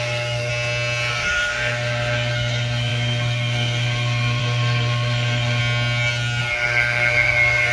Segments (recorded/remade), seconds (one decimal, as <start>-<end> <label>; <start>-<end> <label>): 0.0-0.5 remade; 0.5-1.1 recorded; 1.1-5.6 remade; 5.6-6.4 recorded; 6.4-7.7 remade